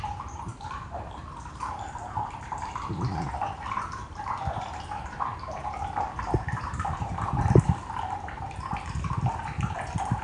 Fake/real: fake